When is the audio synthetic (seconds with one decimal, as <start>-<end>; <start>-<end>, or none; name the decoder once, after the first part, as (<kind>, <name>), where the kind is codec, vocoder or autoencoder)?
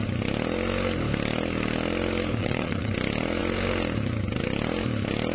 2.4-2.9 (vocoder, Vocos)